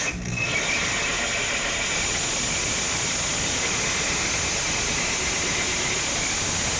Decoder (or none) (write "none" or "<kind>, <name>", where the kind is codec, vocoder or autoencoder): none